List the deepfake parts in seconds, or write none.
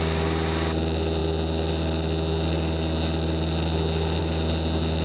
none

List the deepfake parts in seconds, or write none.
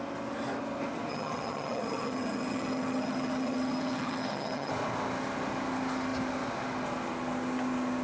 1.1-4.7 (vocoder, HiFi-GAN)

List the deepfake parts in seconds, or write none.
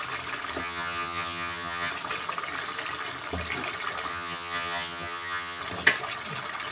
0.6-1.9 (vocoder, HiFi-GAN); 4.1-5.6